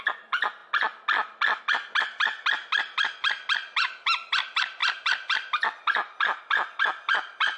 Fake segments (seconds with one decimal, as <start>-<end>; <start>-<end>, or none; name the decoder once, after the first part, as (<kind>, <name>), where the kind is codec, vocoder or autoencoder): none